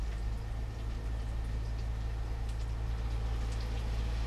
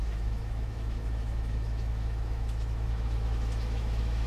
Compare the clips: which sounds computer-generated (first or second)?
second